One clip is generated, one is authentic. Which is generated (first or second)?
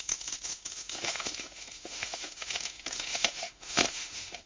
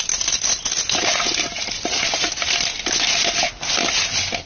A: first